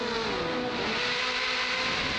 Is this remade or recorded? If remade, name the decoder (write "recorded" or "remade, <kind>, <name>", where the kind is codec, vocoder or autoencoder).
recorded